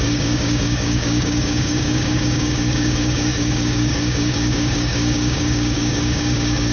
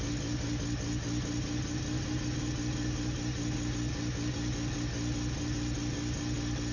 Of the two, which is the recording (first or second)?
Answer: second